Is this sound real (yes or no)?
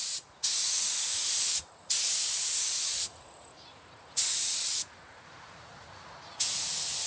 no